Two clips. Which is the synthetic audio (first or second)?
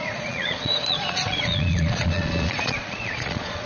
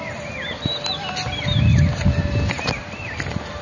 first